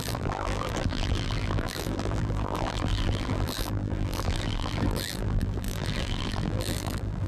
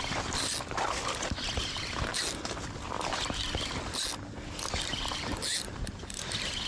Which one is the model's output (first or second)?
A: first